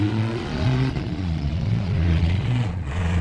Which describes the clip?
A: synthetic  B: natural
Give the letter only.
A